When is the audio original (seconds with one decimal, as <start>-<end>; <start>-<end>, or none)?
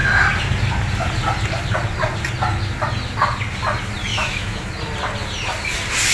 0.0-4.1; 4.7-6.1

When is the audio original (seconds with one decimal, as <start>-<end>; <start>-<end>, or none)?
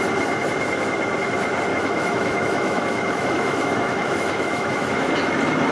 0.0-1.7; 5.1-5.7